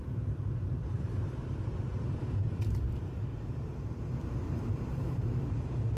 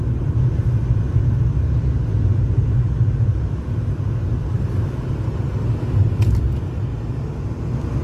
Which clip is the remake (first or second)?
first